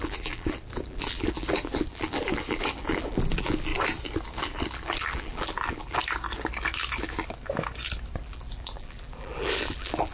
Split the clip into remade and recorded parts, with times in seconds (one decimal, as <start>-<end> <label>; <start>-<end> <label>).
0.0-3.7 remade; 3.7-4.4 recorded; 4.4-6.0 remade; 6.0-8.2 recorded; 8.2-10.1 remade